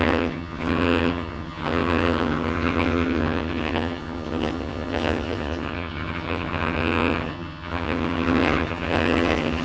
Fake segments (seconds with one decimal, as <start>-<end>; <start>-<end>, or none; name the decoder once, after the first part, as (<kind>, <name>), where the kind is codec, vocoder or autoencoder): 0.0-9.6 (vocoder, HiFi-GAN)